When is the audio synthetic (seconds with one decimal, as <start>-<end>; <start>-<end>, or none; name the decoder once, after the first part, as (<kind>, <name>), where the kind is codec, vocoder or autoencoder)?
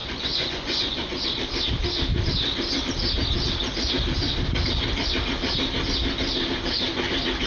0.0-1.2 (vocoder, Vocos)